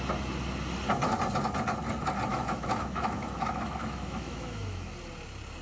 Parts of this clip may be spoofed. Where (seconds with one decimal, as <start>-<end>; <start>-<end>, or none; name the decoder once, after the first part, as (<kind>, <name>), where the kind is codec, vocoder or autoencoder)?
2.3-4.9 (autoencoder, DAC-VAE)